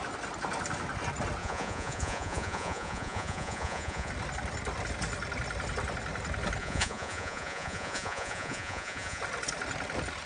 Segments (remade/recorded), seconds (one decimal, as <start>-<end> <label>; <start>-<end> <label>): 0.0-1.4 recorded; 1.4-4.1 remade; 4.1-6.6 recorded; 6.6-9.2 remade; 9.2-10.3 recorded

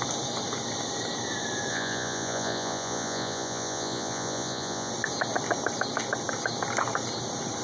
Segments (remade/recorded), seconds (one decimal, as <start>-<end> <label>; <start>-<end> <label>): 0.0-1.7 recorded; 1.7-4.9 remade; 4.9-7.6 recorded

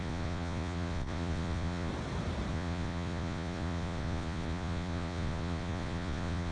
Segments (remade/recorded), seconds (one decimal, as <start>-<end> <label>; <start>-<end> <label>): 0.0-1.9 remade; 1.9-2.5 recorded; 2.5-6.5 remade

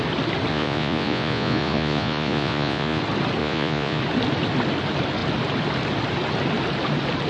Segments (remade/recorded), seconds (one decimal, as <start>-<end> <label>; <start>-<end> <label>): 0.0-0.5 recorded; 0.5-3.0 remade; 3.0-3.4 recorded; 3.4-4.0 remade; 4.0-7.3 recorded

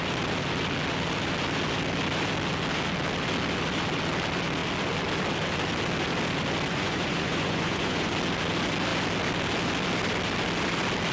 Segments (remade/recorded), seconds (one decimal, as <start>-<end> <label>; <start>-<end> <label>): 0.0-6.7 recorded; 6.7-8.1 remade; 8.1-11.1 recorded